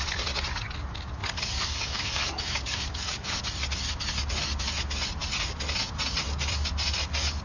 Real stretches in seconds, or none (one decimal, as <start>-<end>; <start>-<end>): 0.0-1.2; 3.4-7.4

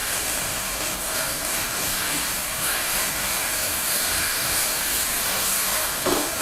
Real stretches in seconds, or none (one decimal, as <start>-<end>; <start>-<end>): none

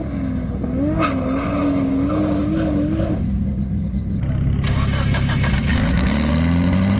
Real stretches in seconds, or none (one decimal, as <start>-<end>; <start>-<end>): 0.0-1.6; 2.4-5.7; 6.3-7.0

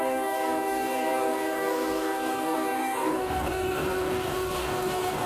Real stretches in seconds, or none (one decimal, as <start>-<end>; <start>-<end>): none

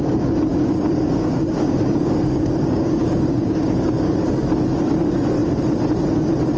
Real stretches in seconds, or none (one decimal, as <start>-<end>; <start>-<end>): 0.0-0.5; 4.5-6.6

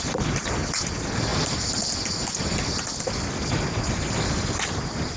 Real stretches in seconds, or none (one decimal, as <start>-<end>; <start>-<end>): 0.0-5.2

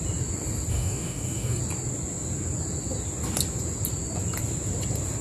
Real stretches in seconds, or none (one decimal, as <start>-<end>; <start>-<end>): 0.0-0.7; 1.6-5.2